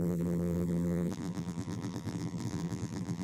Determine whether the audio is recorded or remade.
remade